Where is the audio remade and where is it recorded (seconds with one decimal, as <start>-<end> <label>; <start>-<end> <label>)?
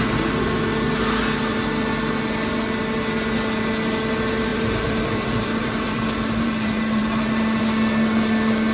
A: 0.0-4.5 recorded; 4.5-7.6 remade; 7.6-8.7 recorded